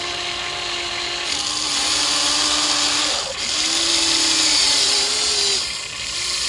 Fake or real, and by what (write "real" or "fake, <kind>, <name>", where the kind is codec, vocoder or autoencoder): real